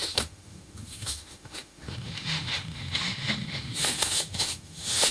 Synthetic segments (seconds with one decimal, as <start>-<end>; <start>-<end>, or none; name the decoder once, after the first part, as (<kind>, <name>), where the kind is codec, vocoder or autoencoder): 0.0-5.1 (autoencoder, DAC-VAE)